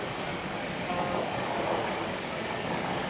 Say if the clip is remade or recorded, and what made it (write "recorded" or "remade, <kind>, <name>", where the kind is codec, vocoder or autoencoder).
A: remade, codec, DAC